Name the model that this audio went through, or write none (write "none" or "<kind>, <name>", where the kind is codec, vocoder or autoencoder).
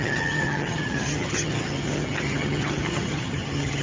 vocoder, HiFi-GAN